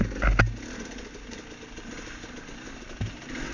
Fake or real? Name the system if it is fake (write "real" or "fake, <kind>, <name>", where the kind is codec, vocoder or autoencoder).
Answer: real